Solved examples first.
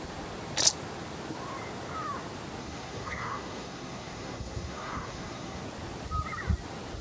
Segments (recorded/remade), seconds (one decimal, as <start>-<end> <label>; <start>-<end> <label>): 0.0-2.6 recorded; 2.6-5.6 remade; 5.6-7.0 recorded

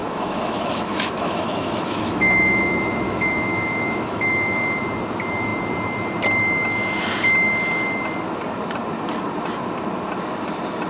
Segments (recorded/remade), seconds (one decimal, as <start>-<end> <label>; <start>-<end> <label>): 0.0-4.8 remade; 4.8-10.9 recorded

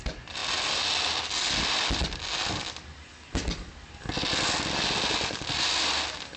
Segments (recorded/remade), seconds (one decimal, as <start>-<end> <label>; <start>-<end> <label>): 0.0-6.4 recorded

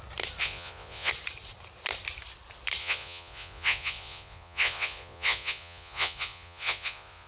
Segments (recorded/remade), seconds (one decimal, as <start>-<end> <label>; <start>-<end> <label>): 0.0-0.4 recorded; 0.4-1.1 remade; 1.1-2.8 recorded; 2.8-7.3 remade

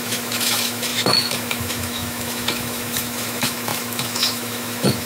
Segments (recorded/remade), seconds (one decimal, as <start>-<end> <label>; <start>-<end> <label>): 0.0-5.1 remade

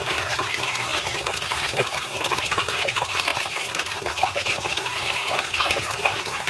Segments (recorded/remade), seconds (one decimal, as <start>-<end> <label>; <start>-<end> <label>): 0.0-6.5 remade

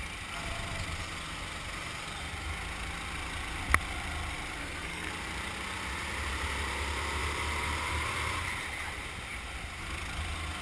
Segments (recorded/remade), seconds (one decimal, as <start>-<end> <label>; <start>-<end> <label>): 0.0-4.6 recorded; 4.6-5.1 remade; 5.1-10.6 recorded

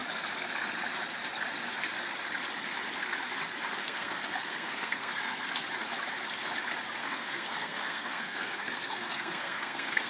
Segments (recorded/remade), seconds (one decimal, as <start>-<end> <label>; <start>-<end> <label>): 0.0-3.8 recorded; 3.8-5.5 remade; 5.5-7.0 recorded; 7.0-10.1 remade